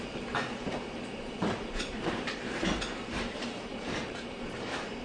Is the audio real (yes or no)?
no